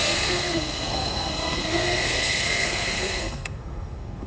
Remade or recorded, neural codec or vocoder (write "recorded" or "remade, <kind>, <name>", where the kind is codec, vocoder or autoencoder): remade, codec, SNAC